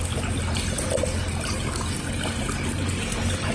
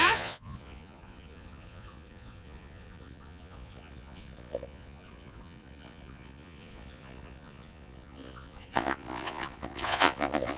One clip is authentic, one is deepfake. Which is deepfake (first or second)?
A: second